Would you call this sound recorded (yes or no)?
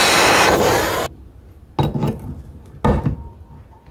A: yes